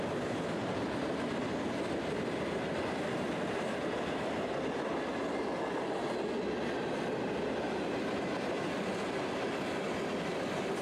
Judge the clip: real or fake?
real